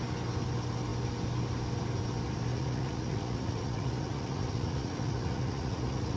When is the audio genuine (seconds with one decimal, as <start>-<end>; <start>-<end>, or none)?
0.0-2.5